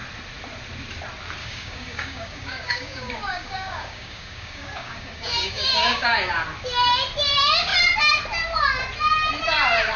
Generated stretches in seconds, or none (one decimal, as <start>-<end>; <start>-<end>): 1.4-6.3